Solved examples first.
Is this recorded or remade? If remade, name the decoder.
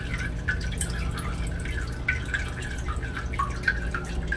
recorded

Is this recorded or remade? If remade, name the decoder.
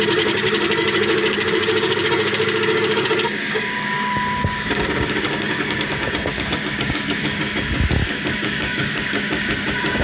remade, codec, DAC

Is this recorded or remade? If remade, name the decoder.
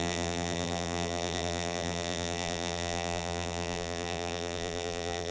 remade, vocoder, BigVGAN v2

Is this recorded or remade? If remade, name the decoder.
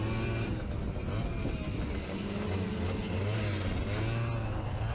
recorded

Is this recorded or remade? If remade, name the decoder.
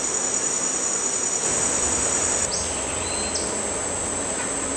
recorded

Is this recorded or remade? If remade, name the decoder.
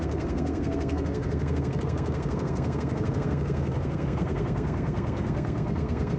remade, codec, SNAC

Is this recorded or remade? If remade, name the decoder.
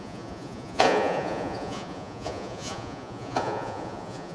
remade, vocoder, Vocos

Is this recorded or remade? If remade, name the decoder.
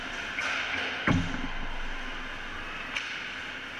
recorded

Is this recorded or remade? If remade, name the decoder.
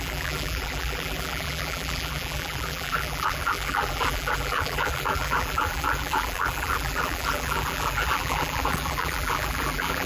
remade, vocoder, BigVGAN v2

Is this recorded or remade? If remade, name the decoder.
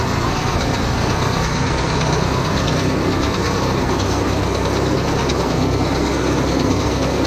remade, codec, SNAC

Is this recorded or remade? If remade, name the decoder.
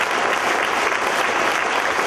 recorded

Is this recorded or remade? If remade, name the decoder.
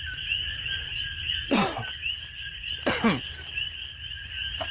recorded